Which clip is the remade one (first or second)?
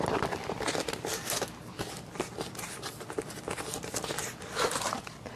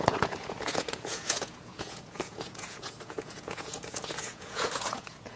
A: second